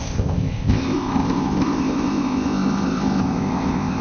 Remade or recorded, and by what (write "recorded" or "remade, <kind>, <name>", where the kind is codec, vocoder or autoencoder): remade, codec, ZipCodec